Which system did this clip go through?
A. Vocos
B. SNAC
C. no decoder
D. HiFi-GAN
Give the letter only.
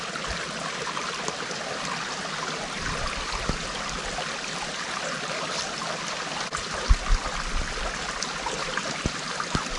C